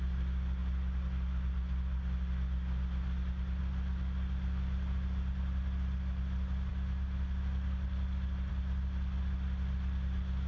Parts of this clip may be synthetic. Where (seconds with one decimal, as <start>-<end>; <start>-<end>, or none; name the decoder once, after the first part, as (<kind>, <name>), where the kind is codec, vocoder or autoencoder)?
none